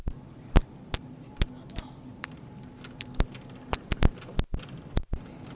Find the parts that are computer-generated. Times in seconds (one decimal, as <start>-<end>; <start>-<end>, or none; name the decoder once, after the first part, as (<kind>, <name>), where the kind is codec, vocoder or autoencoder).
2.1-2.7 (vocoder, BigVGAN v2)